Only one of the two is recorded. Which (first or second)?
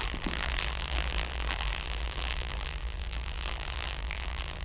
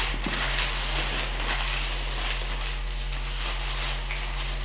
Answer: second